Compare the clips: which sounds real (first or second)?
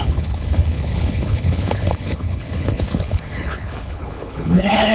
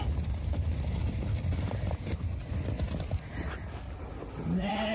second